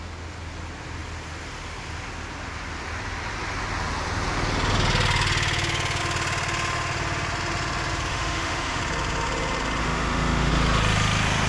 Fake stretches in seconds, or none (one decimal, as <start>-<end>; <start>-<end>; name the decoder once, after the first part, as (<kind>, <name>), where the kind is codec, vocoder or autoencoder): 8.1-8.8 (autoencoder, DAC-VAE); 9.8-10.5